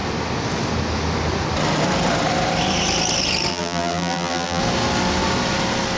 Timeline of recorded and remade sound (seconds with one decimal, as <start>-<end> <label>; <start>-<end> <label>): 0.0-3.5 recorded; 3.5-4.6 remade; 4.6-6.0 recorded